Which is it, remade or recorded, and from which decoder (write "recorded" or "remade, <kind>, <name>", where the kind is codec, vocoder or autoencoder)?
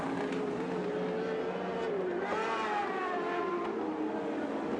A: recorded